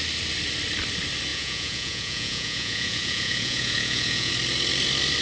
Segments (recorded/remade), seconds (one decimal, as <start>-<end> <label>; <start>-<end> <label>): 0.0-1.3 recorded; 1.3-4.3 remade; 4.3-5.2 recorded